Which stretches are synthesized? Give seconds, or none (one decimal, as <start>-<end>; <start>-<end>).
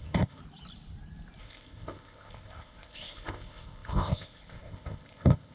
0.0-0.4; 1.4-5.5